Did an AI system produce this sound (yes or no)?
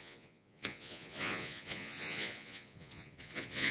yes